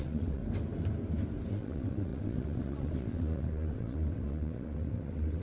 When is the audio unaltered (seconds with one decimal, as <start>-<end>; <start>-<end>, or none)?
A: 0.4-1.5